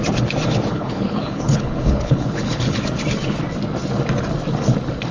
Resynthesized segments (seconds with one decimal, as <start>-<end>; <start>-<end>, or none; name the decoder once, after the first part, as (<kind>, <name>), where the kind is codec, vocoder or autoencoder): 0.7-2.8 (codec, HILCodec)